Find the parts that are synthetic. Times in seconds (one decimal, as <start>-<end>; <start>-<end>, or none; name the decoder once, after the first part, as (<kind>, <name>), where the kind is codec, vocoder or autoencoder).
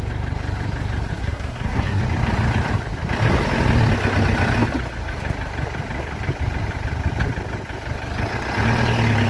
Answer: 1.2-2.0 (codec, SNAC)